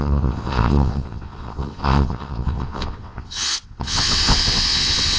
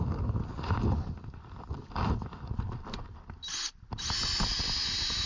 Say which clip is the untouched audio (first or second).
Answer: second